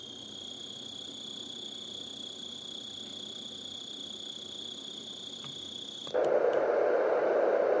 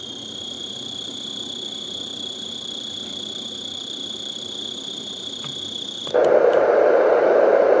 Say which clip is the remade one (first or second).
second